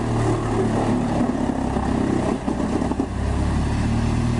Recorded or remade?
recorded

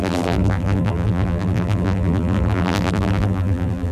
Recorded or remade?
remade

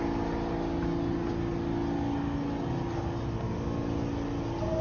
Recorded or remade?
recorded